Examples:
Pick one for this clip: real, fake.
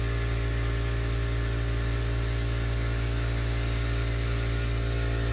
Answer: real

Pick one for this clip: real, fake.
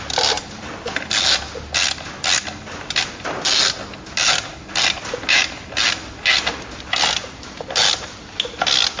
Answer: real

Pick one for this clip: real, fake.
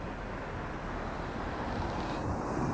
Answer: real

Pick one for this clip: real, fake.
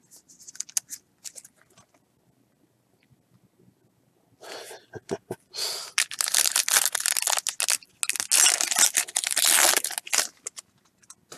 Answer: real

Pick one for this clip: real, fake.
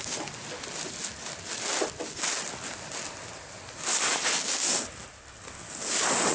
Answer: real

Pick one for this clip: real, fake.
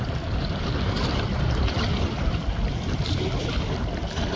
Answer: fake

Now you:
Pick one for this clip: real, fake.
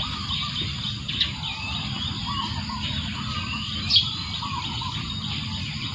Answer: real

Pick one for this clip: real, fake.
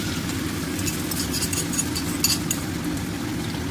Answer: real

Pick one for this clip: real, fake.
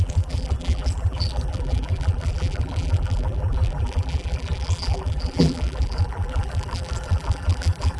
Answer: fake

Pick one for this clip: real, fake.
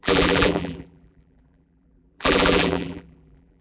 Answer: fake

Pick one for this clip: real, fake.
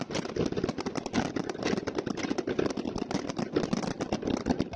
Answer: real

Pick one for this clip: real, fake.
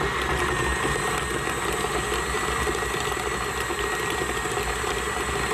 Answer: real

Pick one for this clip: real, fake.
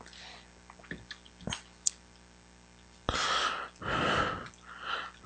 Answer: real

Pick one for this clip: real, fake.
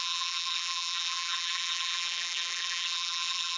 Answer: fake